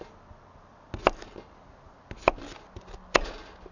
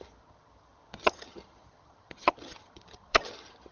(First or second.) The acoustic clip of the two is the first